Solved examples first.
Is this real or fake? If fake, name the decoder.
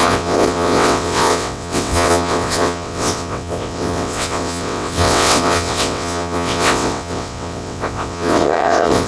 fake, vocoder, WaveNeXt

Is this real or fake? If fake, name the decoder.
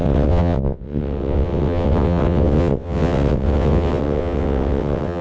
fake, vocoder, WaveNeXt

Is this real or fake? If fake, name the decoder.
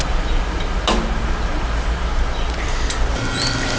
real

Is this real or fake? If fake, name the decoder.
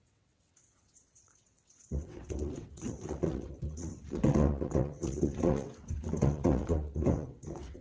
fake, vocoder, WaveNeXt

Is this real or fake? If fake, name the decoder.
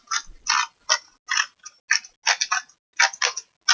real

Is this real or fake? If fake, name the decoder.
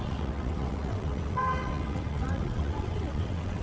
fake, vocoder, WaveNeXt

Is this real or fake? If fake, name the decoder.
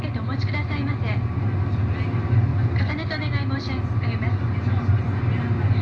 real